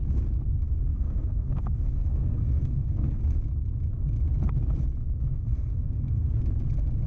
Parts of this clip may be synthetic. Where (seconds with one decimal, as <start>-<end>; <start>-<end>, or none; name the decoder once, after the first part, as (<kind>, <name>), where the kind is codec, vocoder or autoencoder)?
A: 0.9-3.2 (codec, SNAC); 5.0-6.4